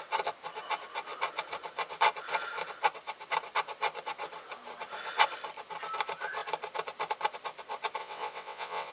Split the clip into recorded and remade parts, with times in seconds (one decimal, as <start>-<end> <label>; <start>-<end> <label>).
0.0-8.0 recorded; 8.0-8.9 remade